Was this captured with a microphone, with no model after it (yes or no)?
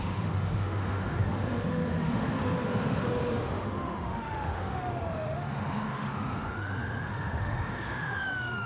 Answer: no